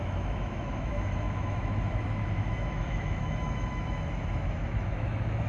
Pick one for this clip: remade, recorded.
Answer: remade